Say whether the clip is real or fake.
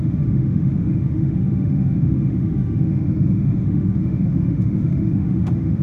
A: fake